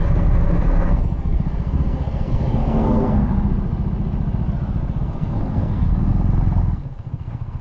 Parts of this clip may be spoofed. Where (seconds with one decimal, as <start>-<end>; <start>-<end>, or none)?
0.0-3.3; 5.0-6.1; 6.6-7.6